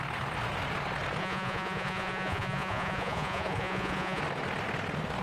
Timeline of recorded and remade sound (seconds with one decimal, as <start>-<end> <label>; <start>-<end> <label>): 0.0-1.2 recorded; 1.2-4.2 remade; 4.2-5.2 recorded